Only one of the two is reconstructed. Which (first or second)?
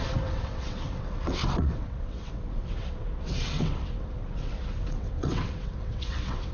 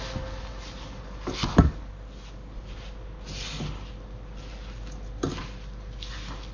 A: first